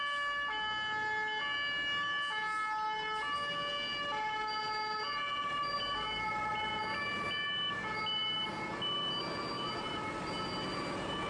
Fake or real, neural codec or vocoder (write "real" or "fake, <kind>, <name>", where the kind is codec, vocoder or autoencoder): real